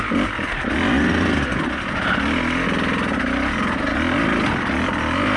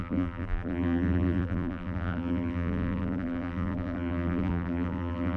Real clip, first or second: first